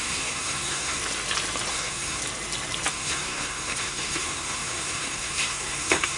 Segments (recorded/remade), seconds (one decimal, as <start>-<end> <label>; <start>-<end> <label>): 0.0-1.0 remade; 1.0-1.7 recorded; 1.7-2.2 remade; 2.2-2.9 recorded; 2.9-6.2 remade